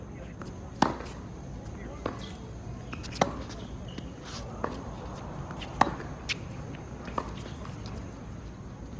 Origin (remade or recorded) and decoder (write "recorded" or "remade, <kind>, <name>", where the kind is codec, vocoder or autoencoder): recorded